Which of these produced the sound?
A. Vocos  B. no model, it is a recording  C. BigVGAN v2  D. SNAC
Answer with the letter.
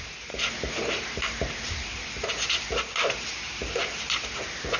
B